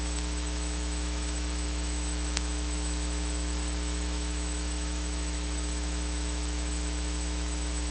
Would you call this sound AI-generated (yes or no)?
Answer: yes